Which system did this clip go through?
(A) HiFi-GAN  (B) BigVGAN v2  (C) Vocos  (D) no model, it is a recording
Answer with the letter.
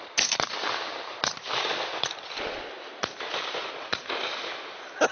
D